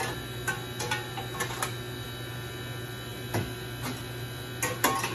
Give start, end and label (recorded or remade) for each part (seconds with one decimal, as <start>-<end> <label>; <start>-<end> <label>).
0.0-5.1 recorded